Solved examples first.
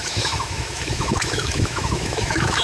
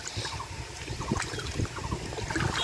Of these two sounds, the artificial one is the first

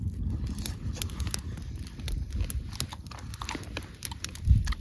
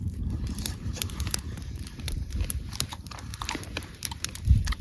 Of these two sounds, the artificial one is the second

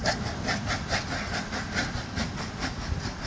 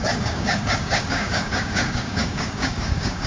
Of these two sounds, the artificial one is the second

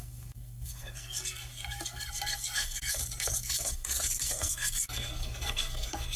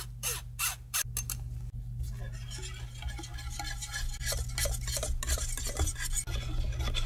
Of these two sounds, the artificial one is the first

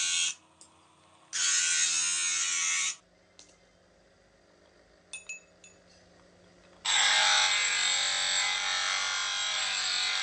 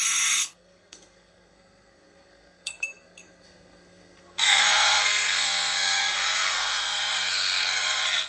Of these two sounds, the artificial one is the second